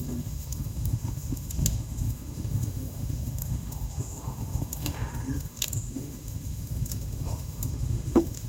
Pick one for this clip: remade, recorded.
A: remade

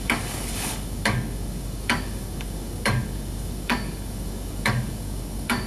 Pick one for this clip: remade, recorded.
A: remade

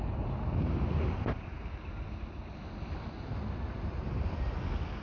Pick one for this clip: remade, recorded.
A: recorded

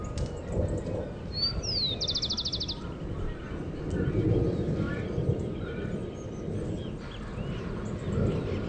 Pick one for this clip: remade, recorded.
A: recorded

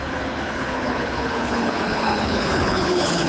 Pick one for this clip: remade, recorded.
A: remade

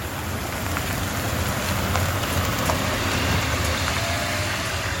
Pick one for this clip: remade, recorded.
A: recorded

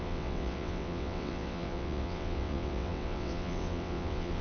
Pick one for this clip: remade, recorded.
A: remade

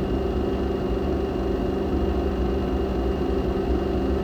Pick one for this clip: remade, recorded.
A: recorded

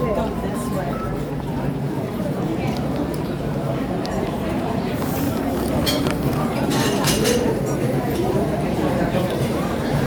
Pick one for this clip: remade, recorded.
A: remade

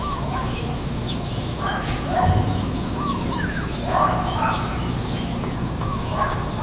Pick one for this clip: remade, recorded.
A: remade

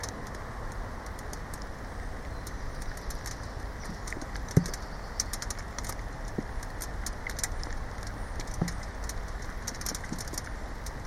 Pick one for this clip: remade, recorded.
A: recorded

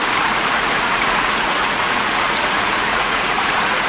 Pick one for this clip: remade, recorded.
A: remade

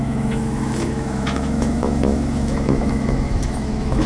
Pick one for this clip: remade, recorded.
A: remade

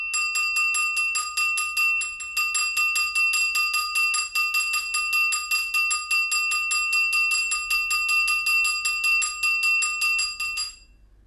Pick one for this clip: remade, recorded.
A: recorded